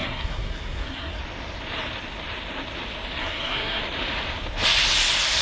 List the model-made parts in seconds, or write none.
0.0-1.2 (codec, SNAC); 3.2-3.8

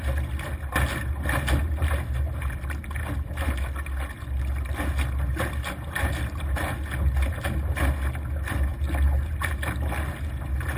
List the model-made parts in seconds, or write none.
none

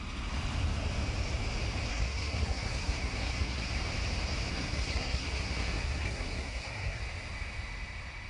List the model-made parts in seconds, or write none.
1.9-3.7 (codec, SNAC); 4.5-7.0

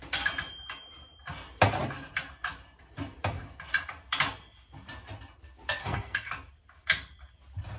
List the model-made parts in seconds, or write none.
5.8-6.3 (codec, SNAC)

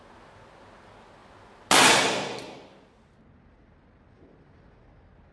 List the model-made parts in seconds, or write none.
none

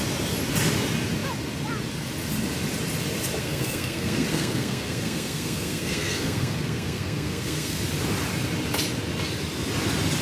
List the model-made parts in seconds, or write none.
3.4-7.8 (codec, SNAC)

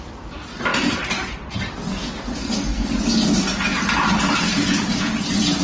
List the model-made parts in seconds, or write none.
2.4-2.9 (codec, SNAC)